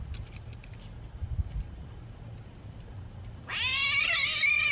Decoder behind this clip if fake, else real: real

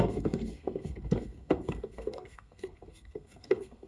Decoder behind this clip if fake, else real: fake, codec, SNAC